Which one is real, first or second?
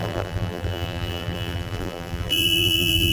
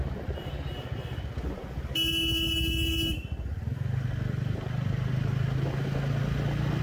second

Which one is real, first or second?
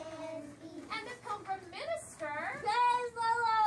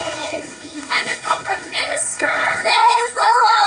first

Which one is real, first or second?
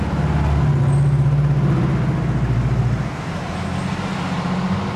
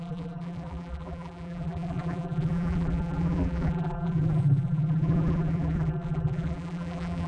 first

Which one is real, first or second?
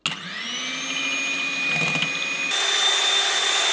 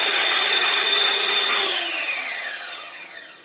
first